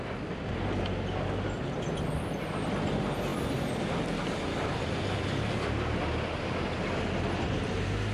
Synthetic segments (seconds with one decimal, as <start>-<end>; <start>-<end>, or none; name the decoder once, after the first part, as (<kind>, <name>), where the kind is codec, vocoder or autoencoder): none